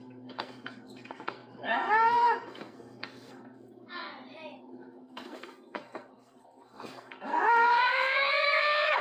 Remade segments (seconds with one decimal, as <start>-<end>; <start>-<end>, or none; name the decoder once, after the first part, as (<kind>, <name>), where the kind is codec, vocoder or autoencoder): 0.0-4.1 (codec, SNAC); 4.6-9.0